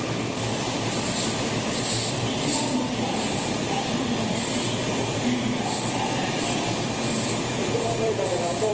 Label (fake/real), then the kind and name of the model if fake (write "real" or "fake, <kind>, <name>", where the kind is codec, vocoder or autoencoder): fake, vocoder, BigVGAN v2